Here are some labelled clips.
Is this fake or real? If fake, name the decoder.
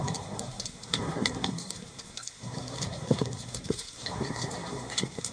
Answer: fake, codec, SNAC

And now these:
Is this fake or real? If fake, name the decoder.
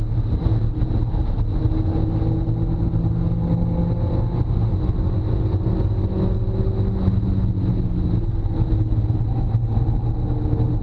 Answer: real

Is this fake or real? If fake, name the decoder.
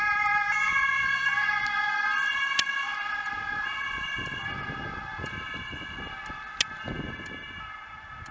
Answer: real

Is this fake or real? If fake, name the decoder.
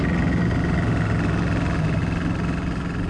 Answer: real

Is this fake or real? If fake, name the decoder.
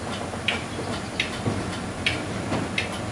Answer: real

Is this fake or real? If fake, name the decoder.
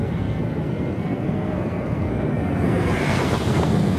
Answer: fake, codec, SNAC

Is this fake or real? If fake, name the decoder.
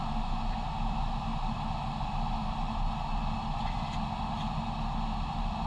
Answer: real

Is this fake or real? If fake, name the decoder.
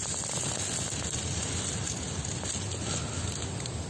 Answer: real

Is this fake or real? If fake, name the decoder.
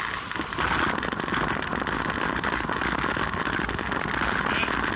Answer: real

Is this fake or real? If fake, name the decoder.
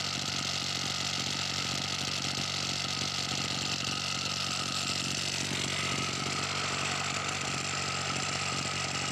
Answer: real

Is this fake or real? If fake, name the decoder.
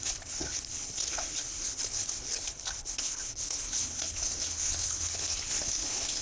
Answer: fake, codec, HILCodec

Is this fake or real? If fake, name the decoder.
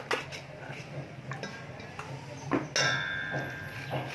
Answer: real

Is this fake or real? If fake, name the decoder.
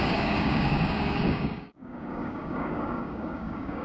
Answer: fake, codec, DAC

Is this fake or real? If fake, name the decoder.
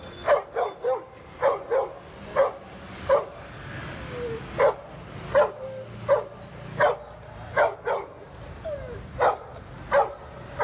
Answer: real